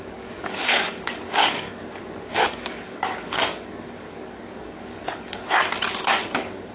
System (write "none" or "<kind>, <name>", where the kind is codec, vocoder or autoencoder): codec, DAC